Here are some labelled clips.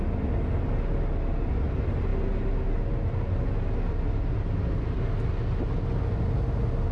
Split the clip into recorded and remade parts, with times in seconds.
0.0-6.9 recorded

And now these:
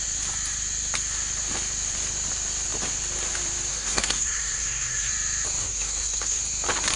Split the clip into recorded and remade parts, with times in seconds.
0.0-3.7 recorded; 3.7-5.1 remade; 5.1-5.6 recorded; 5.6-6.4 remade; 6.4-7.0 recorded

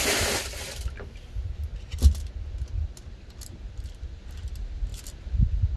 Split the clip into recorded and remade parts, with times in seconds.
0.0-5.8 recorded

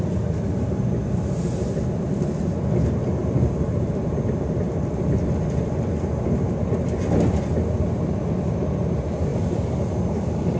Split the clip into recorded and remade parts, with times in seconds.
0.0-10.6 recorded

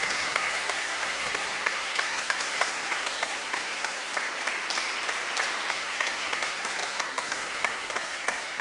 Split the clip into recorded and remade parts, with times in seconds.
0.0-4.1 remade; 4.1-5.7 recorded; 5.7-8.6 remade